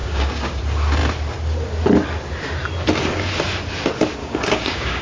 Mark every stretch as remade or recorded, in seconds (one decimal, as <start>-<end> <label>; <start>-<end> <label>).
0.0-0.6 remade; 0.6-4.2 recorded; 4.2-5.0 remade

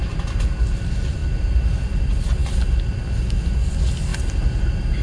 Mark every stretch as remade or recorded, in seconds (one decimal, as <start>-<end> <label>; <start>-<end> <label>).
0.0-5.0 recorded

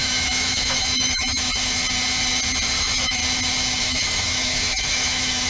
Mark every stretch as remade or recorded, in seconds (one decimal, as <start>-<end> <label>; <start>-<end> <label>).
0.0-1.8 remade; 1.8-2.8 recorded; 2.8-3.2 remade; 3.2-3.8 recorded; 3.8-5.5 remade